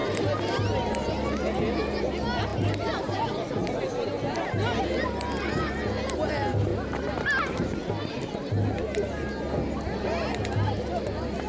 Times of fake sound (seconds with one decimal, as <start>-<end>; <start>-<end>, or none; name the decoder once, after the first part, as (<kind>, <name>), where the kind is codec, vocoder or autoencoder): none